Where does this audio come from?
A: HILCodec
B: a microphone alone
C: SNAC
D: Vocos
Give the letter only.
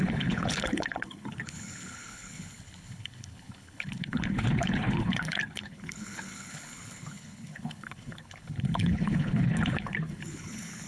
A